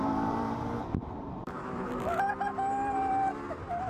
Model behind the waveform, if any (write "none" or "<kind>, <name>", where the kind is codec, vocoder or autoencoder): vocoder, BigVGAN v2